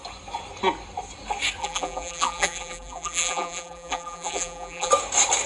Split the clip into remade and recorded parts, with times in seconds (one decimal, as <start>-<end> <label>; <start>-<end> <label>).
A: 0.0-1.6 recorded; 1.6-4.9 remade; 4.9-5.5 recorded